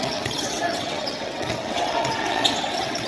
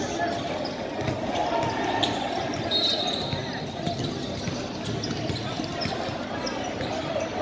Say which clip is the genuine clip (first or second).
second